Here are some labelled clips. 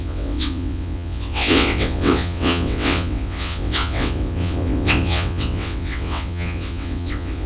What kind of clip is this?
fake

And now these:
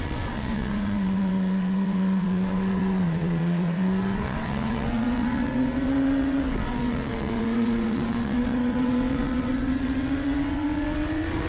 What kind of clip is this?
fake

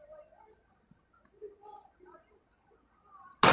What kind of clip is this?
real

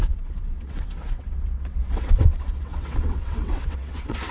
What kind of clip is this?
fake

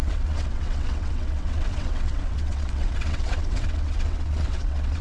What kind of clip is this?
fake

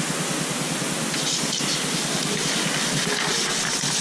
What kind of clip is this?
real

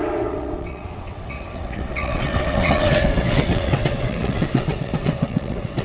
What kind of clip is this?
fake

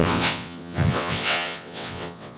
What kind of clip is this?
fake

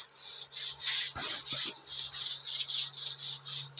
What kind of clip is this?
real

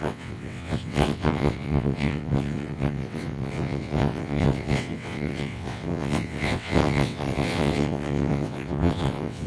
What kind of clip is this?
fake